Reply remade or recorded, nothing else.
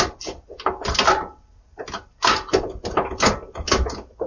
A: recorded